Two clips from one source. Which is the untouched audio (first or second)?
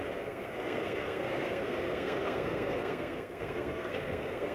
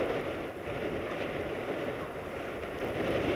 second